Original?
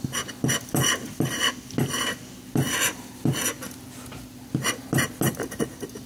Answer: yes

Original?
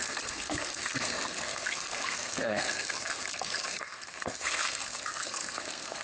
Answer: no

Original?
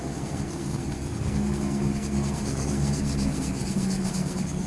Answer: no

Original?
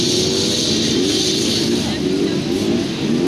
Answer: yes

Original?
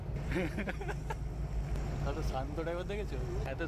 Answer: yes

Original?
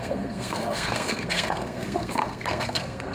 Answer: no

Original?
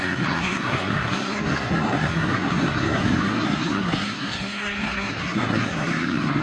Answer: no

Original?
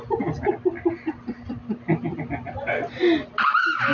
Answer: yes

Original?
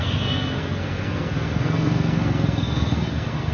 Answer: no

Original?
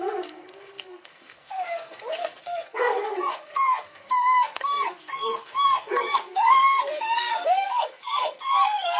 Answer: no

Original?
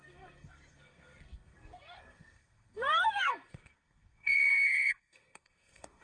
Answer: no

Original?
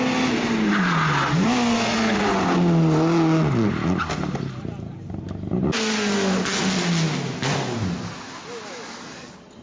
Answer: yes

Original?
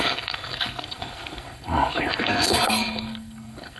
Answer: no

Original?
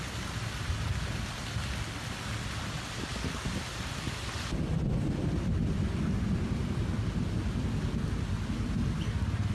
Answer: yes